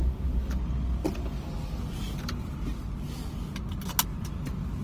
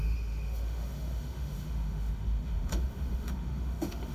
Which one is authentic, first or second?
first